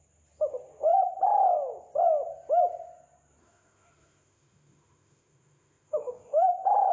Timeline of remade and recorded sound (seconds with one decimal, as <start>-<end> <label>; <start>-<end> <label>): 0.0-3.4 recorded; 3.4-6.5 remade; 6.5-6.9 recorded